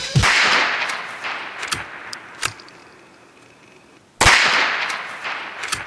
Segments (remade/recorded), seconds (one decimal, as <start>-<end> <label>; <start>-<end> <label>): 0.0-2.8 remade; 2.8-4.4 recorded; 4.4-5.9 remade